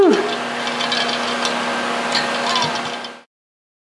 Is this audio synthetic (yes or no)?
no